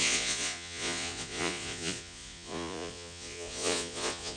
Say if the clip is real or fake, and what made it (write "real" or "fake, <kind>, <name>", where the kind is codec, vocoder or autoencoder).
fake, vocoder, Vocos